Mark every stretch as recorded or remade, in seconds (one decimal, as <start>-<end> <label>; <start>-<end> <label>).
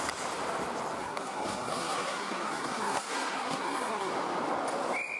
0.0-1.0 recorded; 1.0-4.1 remade; 4.1-5.2 recorded